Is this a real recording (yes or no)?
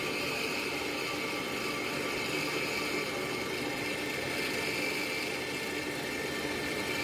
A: yes